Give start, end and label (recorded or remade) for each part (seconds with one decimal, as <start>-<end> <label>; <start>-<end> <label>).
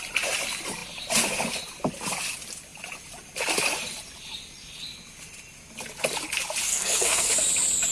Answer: 0.0-6.7 recorded; 6.7-7.3 remade; 7.3-7.9 recorded